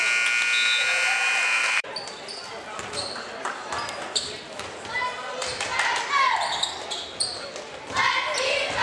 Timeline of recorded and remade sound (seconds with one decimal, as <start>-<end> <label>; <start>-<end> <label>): 0.0-1.6 recorded; 1.6-2.4 remade; 2.4-8.8 recorded